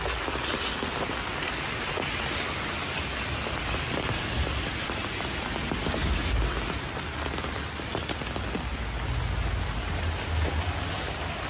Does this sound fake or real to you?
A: real